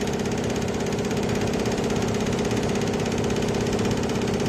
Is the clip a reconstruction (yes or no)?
yes